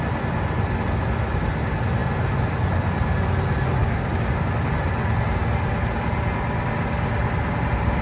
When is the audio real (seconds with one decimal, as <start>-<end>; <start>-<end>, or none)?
0.0-3.8; 4.5-8.0